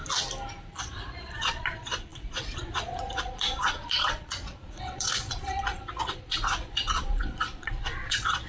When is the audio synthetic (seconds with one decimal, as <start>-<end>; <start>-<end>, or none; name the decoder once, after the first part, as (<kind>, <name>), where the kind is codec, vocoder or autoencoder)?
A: 0.8-8.5 (vocoder, Vocos)